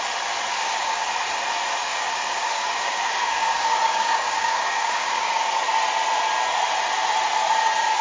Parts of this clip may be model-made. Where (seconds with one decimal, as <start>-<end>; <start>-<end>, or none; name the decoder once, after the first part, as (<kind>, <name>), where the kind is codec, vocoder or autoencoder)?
0.5-1.1 (codec, DAC); 1.9-5.4